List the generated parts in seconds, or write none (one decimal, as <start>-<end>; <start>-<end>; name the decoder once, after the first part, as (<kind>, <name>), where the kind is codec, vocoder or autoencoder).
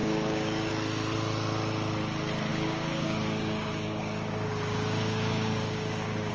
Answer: 0.0-0.7 (codec, DAC); 2.5-6.3